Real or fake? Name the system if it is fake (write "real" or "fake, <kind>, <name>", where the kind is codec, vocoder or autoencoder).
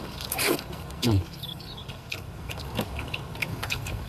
fake, codec, SNAC